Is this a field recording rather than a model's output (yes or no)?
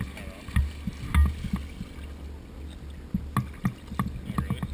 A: yes